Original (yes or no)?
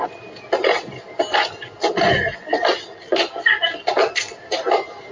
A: yes